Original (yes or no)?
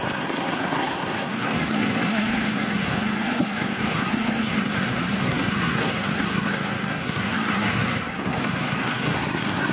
no